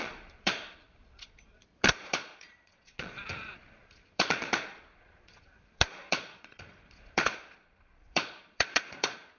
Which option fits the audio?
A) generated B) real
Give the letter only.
A